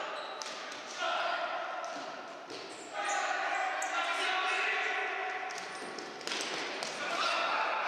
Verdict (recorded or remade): recorded